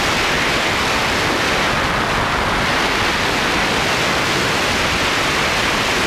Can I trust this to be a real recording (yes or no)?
yes